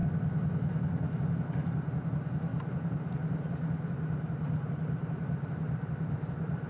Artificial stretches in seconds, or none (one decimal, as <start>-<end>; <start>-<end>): 2.5-6.7